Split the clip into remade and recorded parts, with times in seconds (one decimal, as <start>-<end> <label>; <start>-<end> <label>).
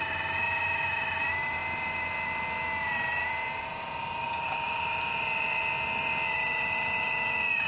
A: 0.0-3.7 recorded; 3.7-5.6 remade; 5.6-7.7 recorded